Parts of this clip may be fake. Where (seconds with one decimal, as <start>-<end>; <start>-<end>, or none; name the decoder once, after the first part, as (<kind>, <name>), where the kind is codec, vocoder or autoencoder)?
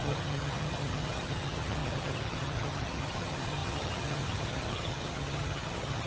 0.0-6.1 (vocoder, HiFi-GAN)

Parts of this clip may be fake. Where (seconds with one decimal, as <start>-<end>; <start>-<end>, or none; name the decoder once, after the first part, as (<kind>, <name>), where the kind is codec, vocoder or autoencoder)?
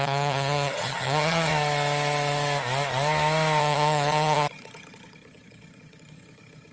0.0-1.5 (vocoder, HiFi-GAN); 3.6-6.7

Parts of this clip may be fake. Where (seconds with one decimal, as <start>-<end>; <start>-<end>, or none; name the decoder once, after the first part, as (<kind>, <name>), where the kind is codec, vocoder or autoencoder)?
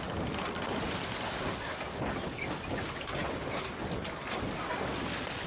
none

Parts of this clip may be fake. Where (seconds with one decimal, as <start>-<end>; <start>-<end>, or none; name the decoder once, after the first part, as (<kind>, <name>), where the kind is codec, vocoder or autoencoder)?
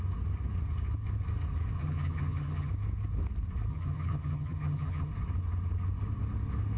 1.8-2.7 (vocoder, HiFi-GAN); 3.7-5.1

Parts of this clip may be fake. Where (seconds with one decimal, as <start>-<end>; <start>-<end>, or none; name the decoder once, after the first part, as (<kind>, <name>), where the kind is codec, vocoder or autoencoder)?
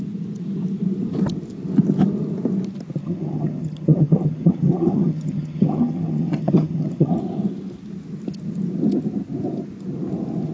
3.0-7.2 (vocoder, HiFi-GAN)